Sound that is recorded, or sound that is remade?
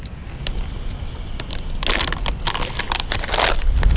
recorded